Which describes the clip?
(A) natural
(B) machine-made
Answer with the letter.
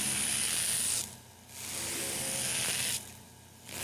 A